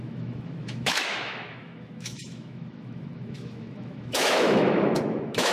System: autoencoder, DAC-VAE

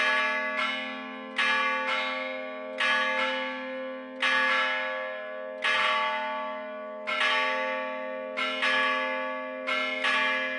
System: none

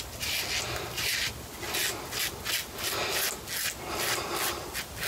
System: none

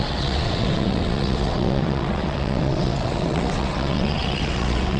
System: vocoder, WaveNeXt